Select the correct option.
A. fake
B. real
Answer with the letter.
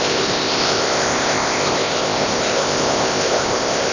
A